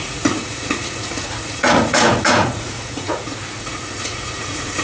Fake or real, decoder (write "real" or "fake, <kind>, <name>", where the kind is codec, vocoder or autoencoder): fake, vocoder, Vocos